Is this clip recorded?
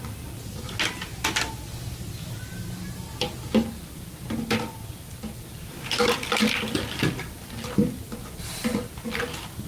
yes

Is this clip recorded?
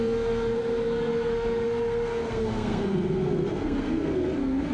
no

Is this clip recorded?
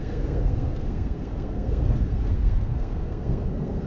no